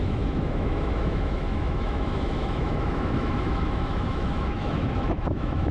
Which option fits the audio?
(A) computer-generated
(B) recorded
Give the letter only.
A